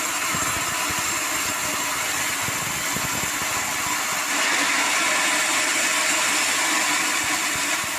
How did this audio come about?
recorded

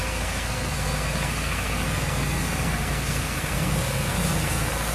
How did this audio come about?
remade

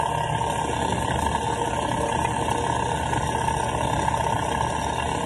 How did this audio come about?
recorded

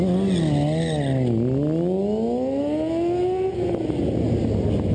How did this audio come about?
recorded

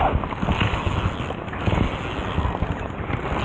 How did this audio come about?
recorded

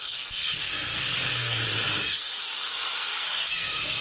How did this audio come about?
remade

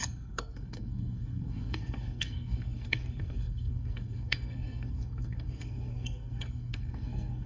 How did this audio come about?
remade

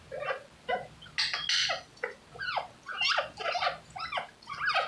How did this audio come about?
recorded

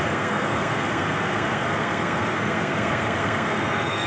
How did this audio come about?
remade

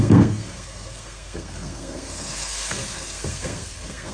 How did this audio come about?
remade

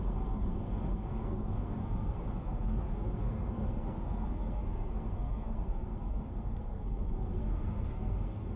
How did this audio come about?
remade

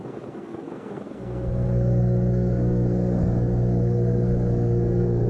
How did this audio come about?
remade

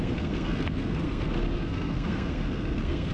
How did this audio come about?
remade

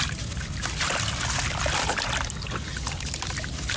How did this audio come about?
recorded